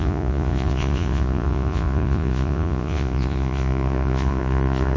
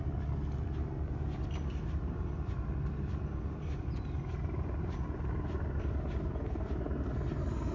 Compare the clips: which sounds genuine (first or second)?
second